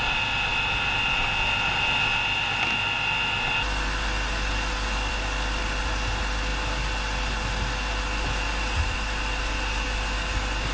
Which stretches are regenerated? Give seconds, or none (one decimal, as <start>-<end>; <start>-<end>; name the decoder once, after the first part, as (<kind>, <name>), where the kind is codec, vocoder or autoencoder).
none